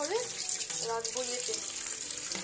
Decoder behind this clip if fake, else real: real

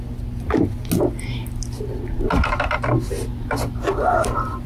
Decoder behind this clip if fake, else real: real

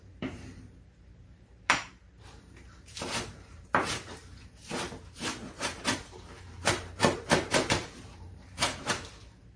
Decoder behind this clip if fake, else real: fake, vocoder, BigVGAN v2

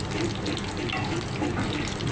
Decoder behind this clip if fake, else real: real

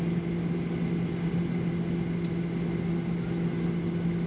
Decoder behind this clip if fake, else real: real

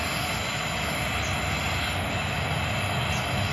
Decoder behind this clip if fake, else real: real